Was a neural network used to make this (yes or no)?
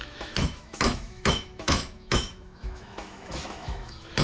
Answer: yes